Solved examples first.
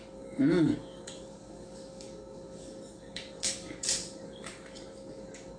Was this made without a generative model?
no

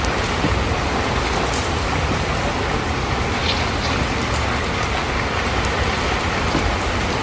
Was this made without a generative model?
yes